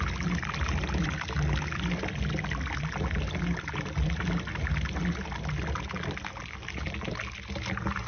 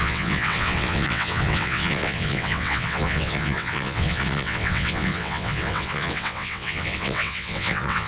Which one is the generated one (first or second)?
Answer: second